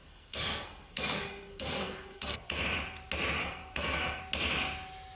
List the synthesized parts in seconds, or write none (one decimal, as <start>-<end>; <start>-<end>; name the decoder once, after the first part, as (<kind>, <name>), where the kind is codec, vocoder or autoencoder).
0.0-2.6 (codec, SNAC); 3.4-4.2